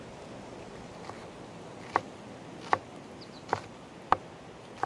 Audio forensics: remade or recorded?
recorded